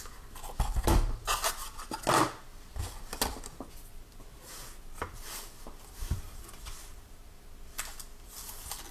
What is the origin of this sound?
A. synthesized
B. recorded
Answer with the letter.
B